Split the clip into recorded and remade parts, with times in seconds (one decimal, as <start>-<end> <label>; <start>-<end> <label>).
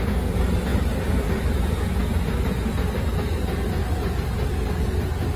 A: 0.0-0.7 recorded; 0.7-2.0 remade; 2.0-5.4 recorded